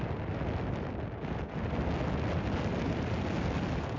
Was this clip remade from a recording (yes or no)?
no